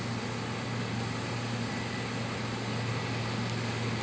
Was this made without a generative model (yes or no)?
yes